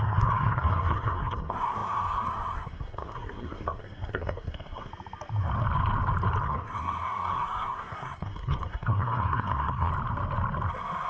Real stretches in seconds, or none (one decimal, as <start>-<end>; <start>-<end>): 4.9-6.4; 9.9-11.1